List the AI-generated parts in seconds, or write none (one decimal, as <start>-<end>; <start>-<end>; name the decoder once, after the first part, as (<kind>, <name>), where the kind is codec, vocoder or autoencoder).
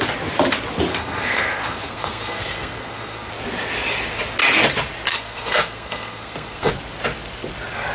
0.9-3.3 (codec, SNAC); 5.1-6.7